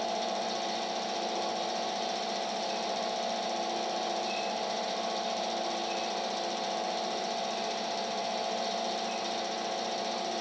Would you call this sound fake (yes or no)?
no